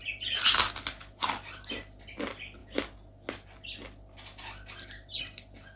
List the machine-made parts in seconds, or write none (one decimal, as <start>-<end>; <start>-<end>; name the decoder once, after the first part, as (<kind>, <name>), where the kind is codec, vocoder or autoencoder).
none

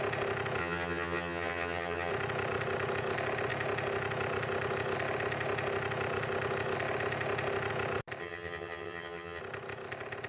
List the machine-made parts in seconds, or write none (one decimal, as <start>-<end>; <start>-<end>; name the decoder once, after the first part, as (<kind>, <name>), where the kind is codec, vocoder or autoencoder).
0.6-2.1 (vocoder, HiFi-GAN); 8.2-9.4

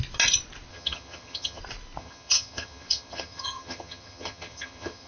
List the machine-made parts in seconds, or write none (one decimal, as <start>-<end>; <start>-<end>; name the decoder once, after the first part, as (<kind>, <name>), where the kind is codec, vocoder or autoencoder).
0.7-1.6 (vocoder, HiFi-GAN); 2.0-5.1

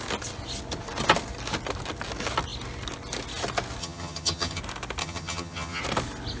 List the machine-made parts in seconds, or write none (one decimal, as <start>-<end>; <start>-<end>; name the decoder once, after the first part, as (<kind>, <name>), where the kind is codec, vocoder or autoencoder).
3.8-4.6 (vocoder, HiFi-GAN); 5.0-5.8

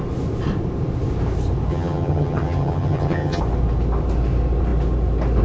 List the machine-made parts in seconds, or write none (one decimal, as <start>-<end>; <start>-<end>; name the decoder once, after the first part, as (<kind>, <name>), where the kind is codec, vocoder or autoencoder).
1.7-3.4 (vocoder, HiFi-GAN)

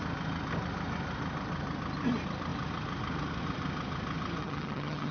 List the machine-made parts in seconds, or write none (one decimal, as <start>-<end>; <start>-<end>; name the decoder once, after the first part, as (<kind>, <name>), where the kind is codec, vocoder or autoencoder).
4.4-5.1 (vocoder, HiFi-GAN)

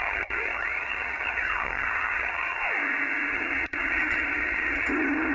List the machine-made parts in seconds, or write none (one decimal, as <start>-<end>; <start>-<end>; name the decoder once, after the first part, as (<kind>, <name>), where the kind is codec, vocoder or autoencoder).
0.0-2.6 (vocoder, HiFi-GAN); 3.3-5.3